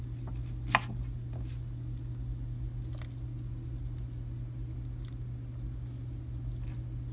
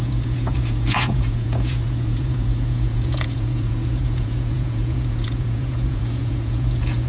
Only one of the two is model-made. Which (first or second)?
second